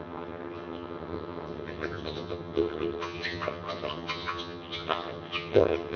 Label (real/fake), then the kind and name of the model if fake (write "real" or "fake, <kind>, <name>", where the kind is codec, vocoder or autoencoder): fake, vocoder, HiFi-GAN